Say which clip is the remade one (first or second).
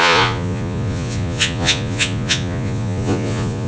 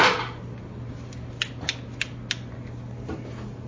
first